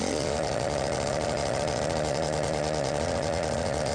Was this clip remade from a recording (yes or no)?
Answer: yes